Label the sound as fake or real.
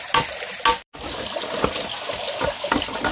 real